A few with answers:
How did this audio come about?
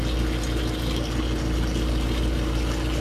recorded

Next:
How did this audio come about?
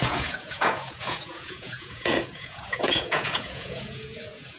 remade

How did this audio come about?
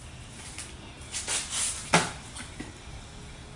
recorded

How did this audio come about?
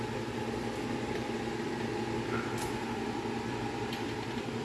recorded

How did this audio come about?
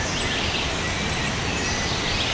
recorded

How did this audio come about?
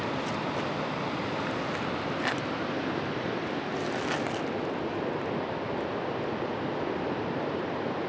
recorded